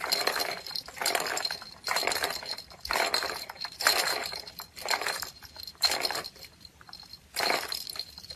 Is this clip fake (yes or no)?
yes